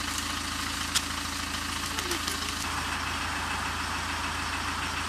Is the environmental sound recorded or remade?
recorded